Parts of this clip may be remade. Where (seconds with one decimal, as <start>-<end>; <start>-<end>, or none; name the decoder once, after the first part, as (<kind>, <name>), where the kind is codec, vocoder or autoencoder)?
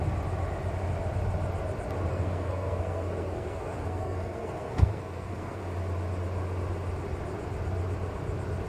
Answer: 2.1-5.6 (codec, SNAC)